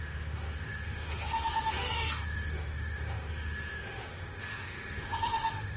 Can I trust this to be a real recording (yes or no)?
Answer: no